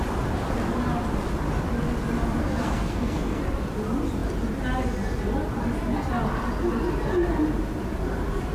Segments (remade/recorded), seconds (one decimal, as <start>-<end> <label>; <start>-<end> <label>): 0.0-2.4 recorded; 2.4-3.4 remade; 3.4-8.5 recorded